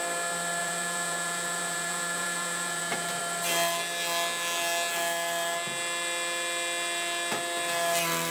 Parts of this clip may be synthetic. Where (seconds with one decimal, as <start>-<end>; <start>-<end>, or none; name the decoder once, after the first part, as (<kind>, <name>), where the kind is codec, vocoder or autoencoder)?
0.6-3.2 (vocoder, Vocos)